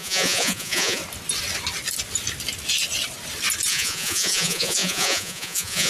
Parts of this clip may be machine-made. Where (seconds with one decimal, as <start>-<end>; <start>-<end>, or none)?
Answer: 0.0-1.0; 3.7-5.9